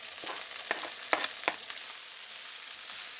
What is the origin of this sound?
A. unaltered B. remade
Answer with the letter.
A